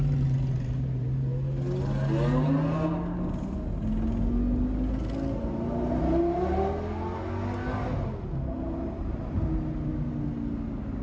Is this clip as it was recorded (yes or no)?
yes